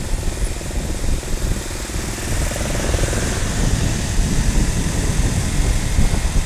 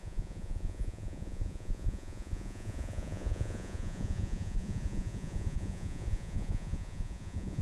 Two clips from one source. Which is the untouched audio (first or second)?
first